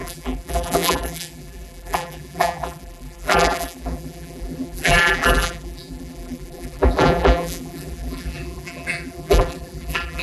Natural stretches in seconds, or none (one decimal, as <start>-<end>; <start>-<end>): none